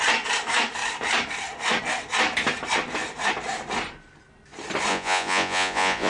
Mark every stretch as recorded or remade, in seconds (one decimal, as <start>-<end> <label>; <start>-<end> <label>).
0.0-4.9 recorded; 4.9-6.1 remade